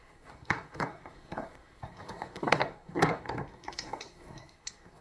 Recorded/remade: remade